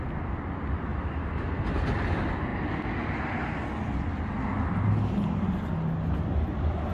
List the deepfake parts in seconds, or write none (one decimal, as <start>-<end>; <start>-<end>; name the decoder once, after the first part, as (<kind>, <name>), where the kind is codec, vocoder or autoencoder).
none